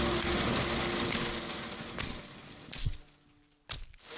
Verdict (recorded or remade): recorded